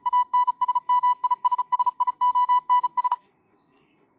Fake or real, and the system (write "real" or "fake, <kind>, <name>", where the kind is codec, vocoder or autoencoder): fake, codec, SNAC